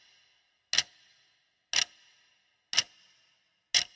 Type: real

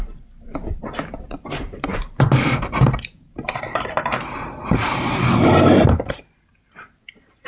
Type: fake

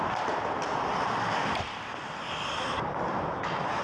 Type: fake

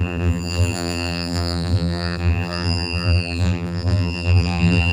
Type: fake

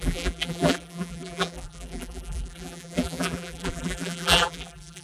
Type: fake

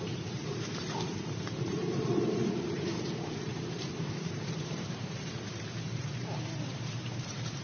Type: fake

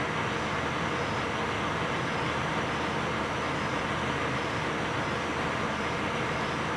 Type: real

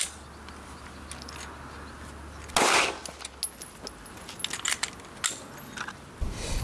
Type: real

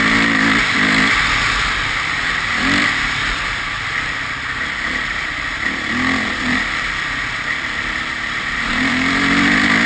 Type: fake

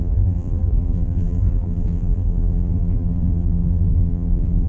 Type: fake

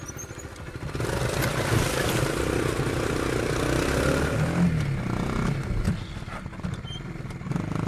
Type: real